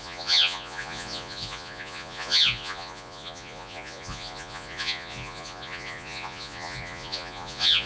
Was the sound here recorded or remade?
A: remade